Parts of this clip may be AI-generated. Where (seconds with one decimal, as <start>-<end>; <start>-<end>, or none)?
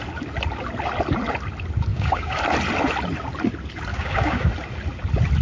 1.9-2.4; 3.9-4.5